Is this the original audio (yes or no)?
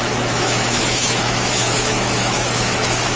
no